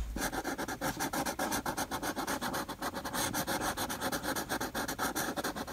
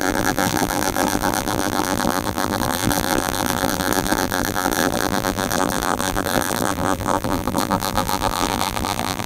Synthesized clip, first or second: second